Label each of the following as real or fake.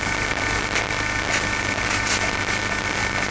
real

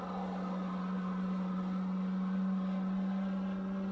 real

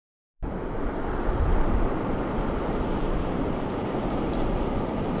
real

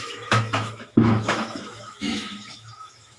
fake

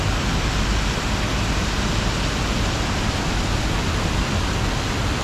real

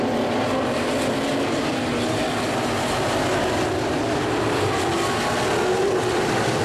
real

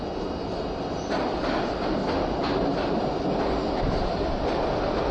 real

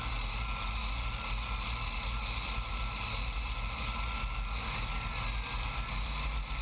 real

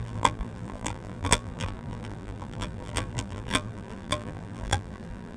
fake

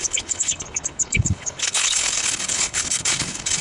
fake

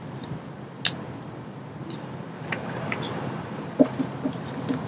real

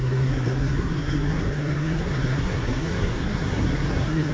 fake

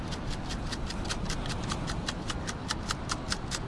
real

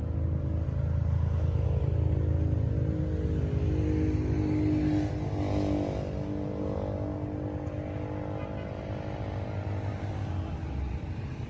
real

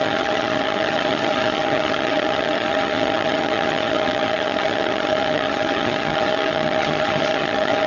fake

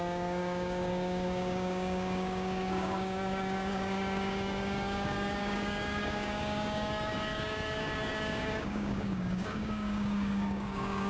fake